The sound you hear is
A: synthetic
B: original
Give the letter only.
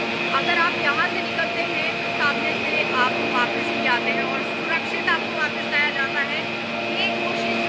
B